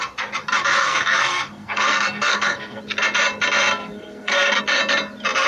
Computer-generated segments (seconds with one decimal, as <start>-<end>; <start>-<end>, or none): 0.8-2.8; 3.8-4.6